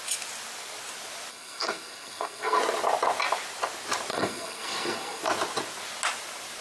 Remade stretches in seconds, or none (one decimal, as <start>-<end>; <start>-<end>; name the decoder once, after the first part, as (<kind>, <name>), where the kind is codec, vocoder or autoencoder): 1.3-2.6 (codec, SNAC); 4.1-5.2

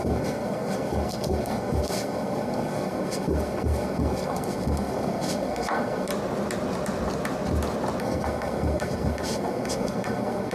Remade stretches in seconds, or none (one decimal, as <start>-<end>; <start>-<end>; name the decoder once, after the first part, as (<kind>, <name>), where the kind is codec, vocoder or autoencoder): 0.0-6.1 (codec, SNAC); 8.0-10.5